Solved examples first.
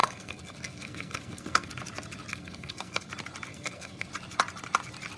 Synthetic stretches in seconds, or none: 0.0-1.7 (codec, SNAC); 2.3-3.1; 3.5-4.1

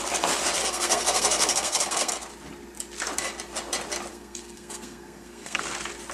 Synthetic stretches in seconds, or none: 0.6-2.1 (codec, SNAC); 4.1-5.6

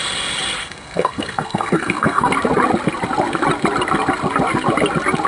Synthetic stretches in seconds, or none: 0.6-2.3 (codec, SNAC)